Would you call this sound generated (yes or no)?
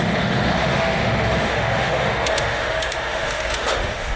yes